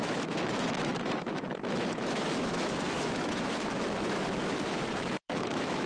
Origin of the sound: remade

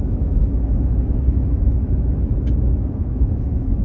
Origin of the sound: remade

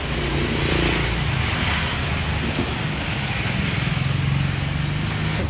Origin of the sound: recorded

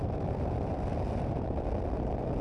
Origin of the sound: recorded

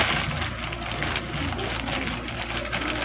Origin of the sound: recorded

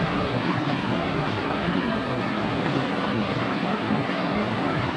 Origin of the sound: remade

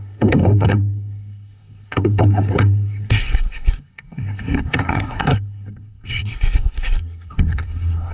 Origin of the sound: remade